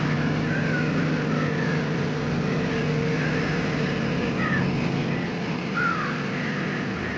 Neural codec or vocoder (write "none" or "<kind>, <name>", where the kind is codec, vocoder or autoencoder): none